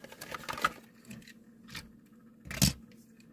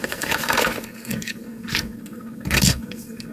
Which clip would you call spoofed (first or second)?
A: second